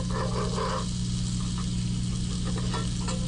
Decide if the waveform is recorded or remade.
recorded